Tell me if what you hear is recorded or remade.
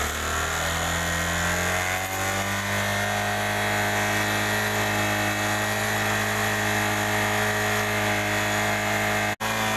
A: recorded